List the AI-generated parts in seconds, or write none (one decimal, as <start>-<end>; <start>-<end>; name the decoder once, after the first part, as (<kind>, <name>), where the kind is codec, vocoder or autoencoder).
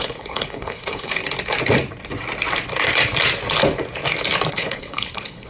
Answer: 0.0-1.2 (codec, HILCodec); 4.5-5.5